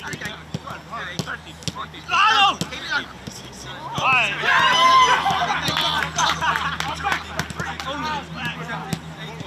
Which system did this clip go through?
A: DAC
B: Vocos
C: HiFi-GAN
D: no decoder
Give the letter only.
D